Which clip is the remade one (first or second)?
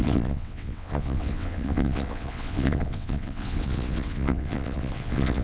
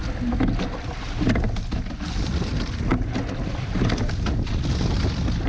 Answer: first